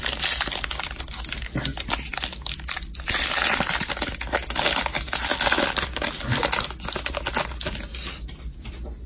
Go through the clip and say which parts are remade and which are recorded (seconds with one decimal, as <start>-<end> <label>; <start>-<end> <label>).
0.0-9.1 recorded